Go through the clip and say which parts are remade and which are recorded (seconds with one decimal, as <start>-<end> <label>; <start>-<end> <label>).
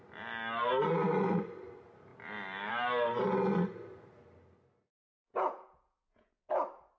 0.0-5.0 recorded; 5.0-6.5 remade; 6.5-7.0 recorded